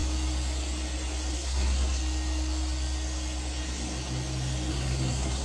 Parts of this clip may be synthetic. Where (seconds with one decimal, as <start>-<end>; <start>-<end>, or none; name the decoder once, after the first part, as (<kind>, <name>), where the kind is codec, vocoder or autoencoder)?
1.3-2.0 (codec, SNAC); 4.7-5.4